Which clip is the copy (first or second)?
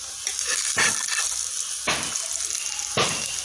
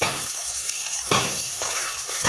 second